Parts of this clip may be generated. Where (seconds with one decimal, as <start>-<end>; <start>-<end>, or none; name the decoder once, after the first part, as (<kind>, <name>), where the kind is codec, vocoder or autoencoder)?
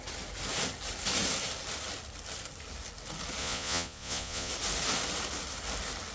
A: 3.4-4.5 (vocoder, Vocos)